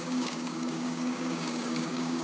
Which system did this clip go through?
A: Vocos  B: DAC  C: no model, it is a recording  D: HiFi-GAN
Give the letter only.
B